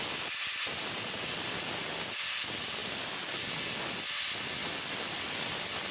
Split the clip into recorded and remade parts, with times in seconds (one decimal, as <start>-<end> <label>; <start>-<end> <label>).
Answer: 0.0-5.9 recorded